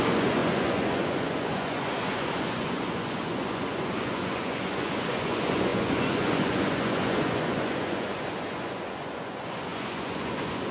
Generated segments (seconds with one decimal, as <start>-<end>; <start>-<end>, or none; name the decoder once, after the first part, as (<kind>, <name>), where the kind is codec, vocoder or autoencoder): 0.0-10.7 (vocoder, Vocos)